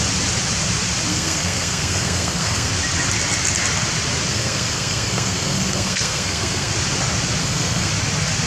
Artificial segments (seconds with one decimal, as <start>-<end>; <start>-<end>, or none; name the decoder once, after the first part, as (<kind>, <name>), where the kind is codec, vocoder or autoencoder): 1.1-2.7 (codec, SNAC); 4.3-6.7; 7.4-7.9